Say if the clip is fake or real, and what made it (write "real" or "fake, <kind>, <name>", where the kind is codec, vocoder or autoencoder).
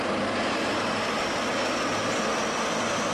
real